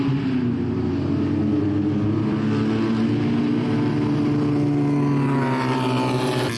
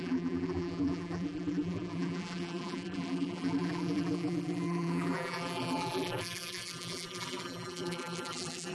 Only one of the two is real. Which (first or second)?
first